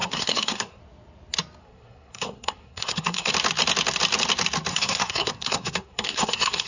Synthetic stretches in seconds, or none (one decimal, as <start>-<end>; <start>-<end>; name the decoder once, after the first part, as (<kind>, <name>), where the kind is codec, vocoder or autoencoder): 0.0-0.8 (codec, SNAC); 1.6-3.3; 4.7-6.7